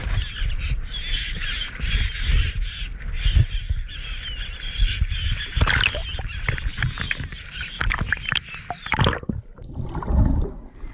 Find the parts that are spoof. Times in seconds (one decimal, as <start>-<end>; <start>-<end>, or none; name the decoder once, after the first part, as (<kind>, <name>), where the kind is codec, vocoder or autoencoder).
none